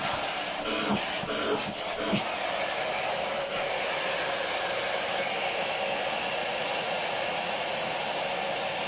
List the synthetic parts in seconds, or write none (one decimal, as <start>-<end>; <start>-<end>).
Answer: 6.4-8.0